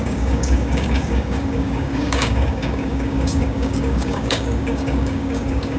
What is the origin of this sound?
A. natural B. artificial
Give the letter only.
B